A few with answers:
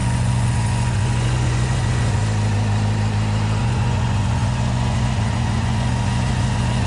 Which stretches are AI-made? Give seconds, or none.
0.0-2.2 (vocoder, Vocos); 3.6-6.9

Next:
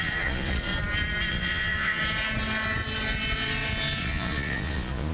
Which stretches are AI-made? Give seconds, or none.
0.0-0.7 (vocoder, Vocos); 1.3-2.0; 4.0-5.1

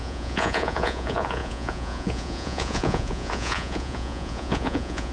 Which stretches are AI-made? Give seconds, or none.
0.0-5.1 (vocoder, Vocos)

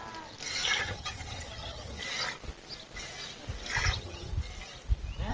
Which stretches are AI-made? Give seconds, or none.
0.8-2.0 (vocoder, HiFi-GAN); 3.9-4.3

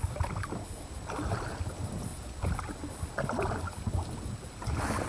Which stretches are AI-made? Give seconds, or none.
none

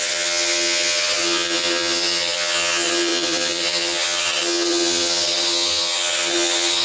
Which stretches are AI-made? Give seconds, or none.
0.0-6.8 (vocoder, HiFi-GAN)

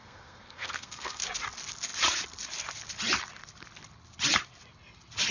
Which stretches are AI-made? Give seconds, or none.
0.0-1.2 (codec, SNAC)